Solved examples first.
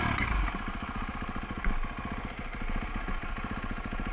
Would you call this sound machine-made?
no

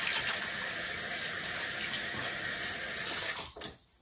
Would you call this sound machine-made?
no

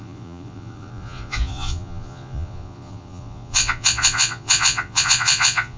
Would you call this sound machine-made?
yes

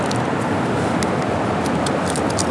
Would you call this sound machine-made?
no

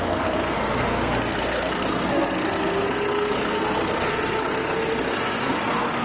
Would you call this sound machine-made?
yes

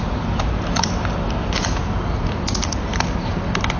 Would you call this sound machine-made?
no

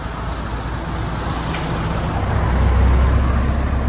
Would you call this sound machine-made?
no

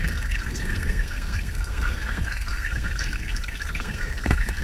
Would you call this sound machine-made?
yes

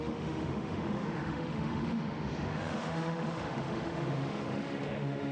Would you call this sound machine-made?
yes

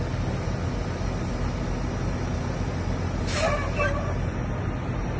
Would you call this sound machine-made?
no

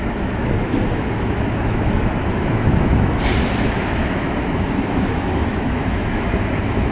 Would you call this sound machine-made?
yes